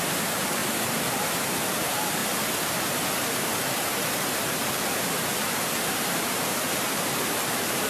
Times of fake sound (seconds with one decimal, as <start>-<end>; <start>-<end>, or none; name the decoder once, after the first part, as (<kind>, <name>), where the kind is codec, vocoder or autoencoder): 0.0-0.6 (vocoder, BigVGAN v2); 1.6-2.2; 4.4-7.9